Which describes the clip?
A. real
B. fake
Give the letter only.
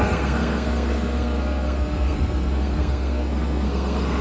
B